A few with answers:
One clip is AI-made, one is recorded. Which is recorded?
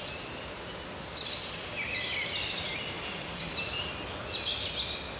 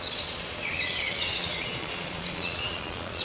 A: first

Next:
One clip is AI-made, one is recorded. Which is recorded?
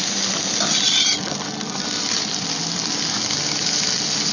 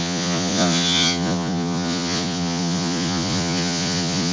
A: first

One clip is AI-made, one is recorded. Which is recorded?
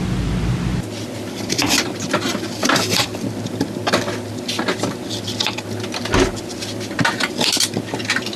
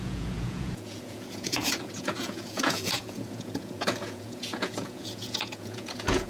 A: first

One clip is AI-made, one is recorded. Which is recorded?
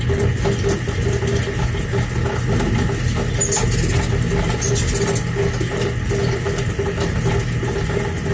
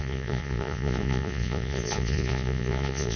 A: first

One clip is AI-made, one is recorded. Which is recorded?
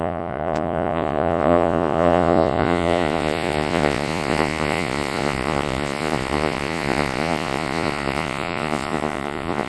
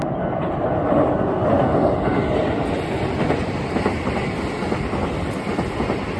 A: second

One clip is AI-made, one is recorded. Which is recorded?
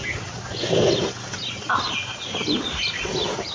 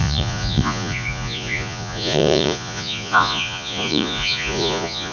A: first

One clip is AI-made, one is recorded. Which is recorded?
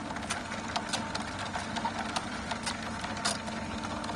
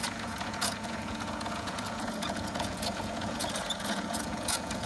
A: first